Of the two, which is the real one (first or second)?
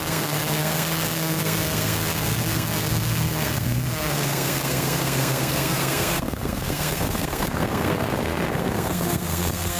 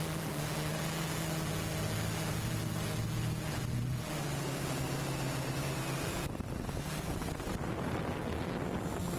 second